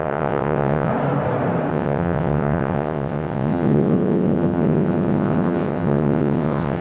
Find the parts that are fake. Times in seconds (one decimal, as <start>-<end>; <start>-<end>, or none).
0.0-0.9; 1.7-6.8

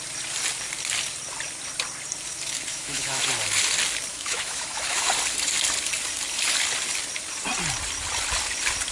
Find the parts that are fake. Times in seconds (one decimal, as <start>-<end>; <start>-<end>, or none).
2.7-3.3; 4.1-5.1

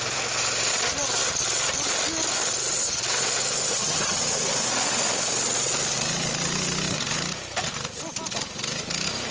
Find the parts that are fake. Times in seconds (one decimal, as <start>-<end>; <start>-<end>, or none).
3.7-4.2

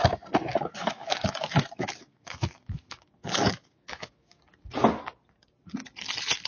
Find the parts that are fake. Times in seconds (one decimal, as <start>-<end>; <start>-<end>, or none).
0.5-4.4

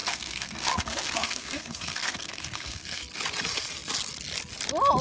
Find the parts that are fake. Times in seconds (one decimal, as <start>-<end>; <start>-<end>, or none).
0.0-3.0

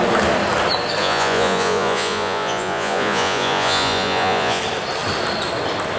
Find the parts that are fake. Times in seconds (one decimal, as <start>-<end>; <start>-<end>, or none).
1.0-4.6

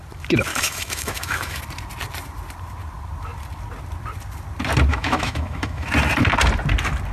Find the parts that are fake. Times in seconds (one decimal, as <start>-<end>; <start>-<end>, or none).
0.5-1.6; 4.9-5.9